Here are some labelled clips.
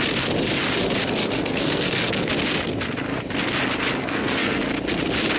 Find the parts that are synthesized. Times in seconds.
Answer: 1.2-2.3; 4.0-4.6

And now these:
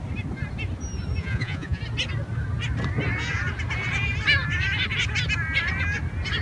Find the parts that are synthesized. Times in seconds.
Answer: 1.2-1.8

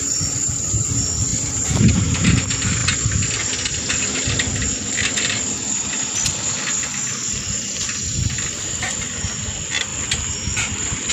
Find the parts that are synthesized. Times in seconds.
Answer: 1.3-1.9; 2.8-3.4; 9.9-11.1

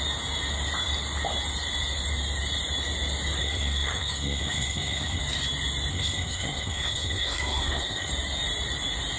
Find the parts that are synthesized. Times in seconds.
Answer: 3.4-5.2; 5.9-8.1

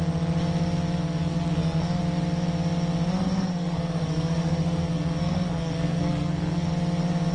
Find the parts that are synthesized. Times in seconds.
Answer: 1.2-2.0; 3.2-6.7